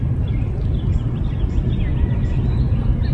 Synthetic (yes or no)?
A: no